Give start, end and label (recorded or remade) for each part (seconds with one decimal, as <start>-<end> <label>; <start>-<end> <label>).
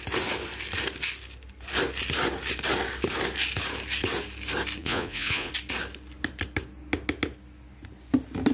0.0-4.8 recorded; 4.8-5.5 remade; 5.5-8.5 recorded